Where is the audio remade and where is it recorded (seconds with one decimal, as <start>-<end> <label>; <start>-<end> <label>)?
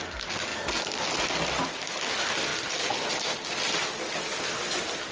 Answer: 0.0-5.1 recorded